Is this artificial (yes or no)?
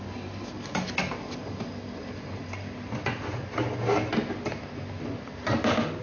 no